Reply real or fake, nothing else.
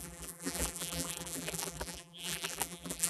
fake